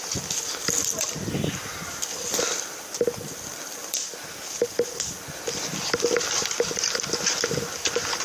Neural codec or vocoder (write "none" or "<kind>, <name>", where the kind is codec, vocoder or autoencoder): none